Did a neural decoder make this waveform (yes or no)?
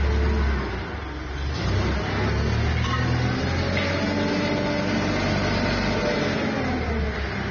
no